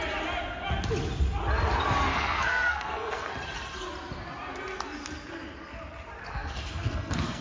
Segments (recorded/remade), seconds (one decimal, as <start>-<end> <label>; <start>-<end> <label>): 0.0-2.1 recorded; 2.1-3.3 remade; 3.3-6.2 recorded; 6.2-7.4 remade